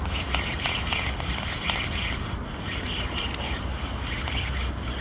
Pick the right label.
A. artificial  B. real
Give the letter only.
B